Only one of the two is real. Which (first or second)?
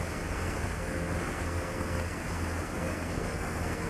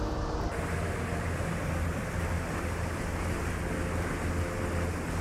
second